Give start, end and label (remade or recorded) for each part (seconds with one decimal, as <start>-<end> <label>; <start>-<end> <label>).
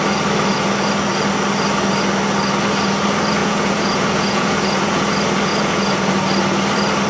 0.0-3.4 recorded; 3.4-5.1 remade; 5.1-5.5 recorded; 5.5-6.1 remade; 6.1-7.1 recorded